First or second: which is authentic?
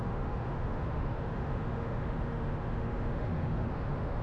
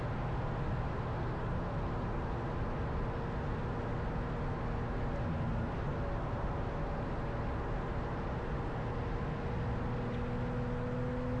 second